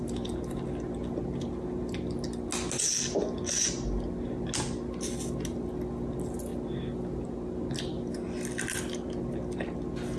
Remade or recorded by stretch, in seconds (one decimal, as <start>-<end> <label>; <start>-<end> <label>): 0.0-10.2 recorded

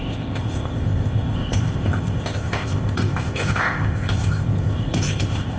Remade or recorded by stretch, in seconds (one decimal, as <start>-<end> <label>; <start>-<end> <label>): 0.0-5.6 remade

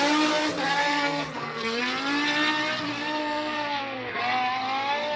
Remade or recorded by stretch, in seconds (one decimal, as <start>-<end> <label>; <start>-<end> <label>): 0.0-0.8 recorded; 0.8-1.8 remade; 1.8-3.2 recorded; 3.2-4.2 remade; 4.2-5.2 recorded

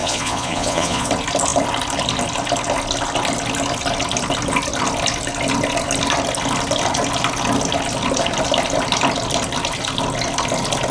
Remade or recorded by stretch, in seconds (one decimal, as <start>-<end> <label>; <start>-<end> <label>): 0.0-1.1 remade; 1.1-10.9 recorded

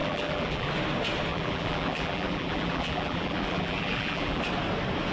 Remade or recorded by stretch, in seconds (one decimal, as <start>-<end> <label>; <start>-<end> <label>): 0.0-0.7 remade; 0.7-1.3 recorded; 1.3-4.4 remade; 4.4-5.1 recorded

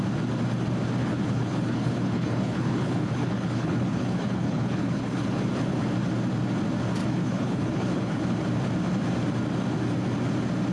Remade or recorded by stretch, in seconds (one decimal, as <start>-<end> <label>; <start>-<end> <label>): 0.0-1.0 recorded; 1.0-5.4 remade; 5.4-7.0 recorded; 7.0-8.2 remade; 8.2-10.7 recorded